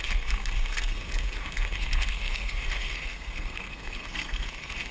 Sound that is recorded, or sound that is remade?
remade